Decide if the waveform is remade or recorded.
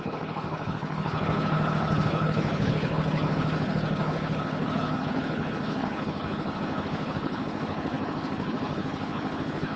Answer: remade